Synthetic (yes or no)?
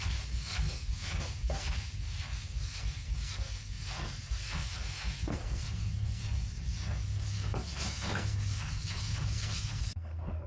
yes